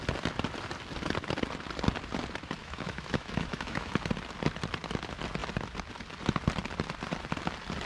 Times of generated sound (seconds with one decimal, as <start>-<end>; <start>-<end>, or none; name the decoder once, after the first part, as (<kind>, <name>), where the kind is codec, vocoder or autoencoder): 2.6-3.9 (autoencoder, DAC-VAE)